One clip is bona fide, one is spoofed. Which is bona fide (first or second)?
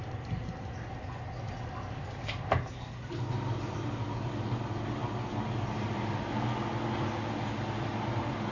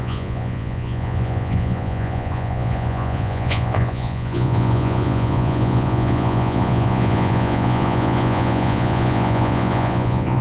first